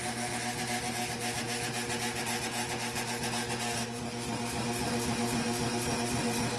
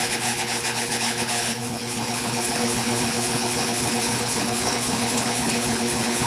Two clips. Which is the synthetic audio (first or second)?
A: second